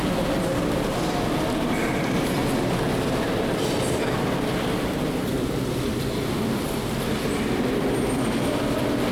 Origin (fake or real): real